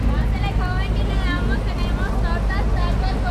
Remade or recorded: recorded